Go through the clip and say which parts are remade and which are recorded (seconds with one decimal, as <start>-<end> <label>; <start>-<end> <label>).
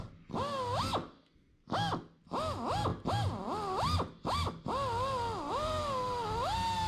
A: 0.0-6.9 recorded